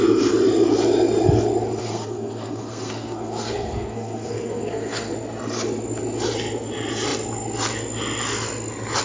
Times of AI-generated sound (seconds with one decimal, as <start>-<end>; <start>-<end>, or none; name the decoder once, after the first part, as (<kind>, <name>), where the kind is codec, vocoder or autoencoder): 1.8-5.1 (codec, SNAC)